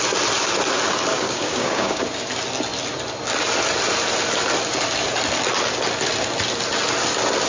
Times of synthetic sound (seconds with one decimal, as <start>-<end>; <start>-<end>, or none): 1.1-2.0